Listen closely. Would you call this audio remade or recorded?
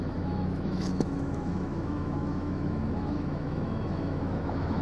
remade